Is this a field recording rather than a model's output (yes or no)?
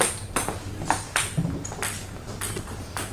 yes